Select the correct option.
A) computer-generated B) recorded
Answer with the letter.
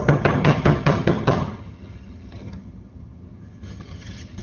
A